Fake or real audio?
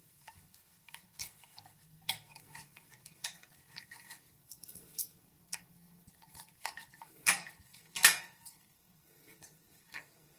fake